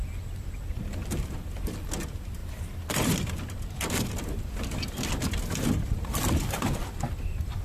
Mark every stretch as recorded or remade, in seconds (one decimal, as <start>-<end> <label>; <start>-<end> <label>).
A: 0.0-7.6 recorded